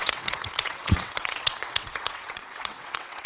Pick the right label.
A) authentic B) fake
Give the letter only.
B